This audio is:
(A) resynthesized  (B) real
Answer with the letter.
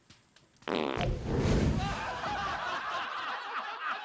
B